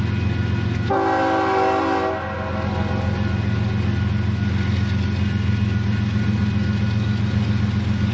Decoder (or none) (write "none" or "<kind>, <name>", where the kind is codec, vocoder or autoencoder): none